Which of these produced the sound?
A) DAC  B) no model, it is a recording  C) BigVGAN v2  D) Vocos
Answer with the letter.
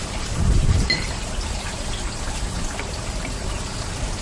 C